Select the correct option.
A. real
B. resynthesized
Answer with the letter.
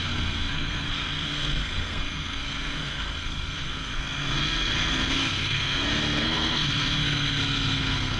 B